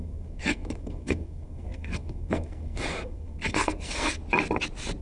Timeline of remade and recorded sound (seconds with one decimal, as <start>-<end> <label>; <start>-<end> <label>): 0.0-4.2 remade; 4.2-5.0 recorded